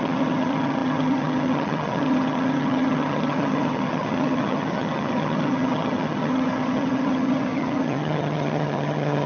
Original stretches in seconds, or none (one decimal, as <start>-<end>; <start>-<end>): none